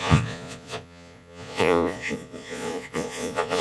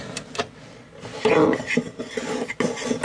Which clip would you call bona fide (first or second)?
second